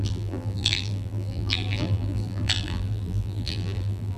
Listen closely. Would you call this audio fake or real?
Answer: fake